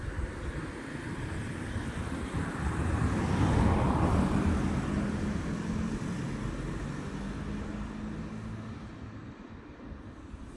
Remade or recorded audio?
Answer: recorded